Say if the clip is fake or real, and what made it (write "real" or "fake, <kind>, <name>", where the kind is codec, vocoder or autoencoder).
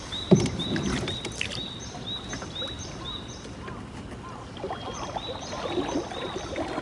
real